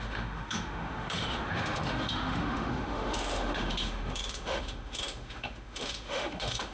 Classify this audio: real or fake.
fake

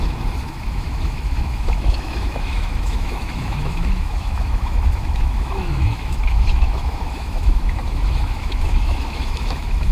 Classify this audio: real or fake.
fake